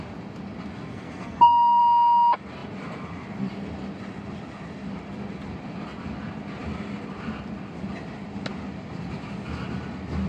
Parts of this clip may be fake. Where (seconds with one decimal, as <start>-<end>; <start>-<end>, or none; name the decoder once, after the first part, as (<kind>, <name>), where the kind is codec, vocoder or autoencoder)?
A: 0.9-1.8 (codec, SNAC)